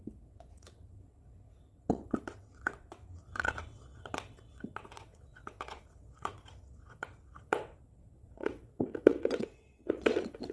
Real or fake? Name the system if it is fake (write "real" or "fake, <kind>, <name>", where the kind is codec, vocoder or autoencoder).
fake, vocoder, WaveNeXt